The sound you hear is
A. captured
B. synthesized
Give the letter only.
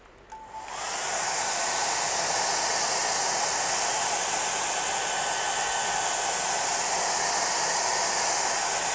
A